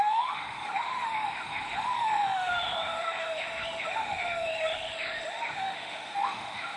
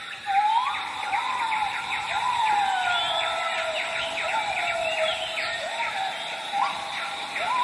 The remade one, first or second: first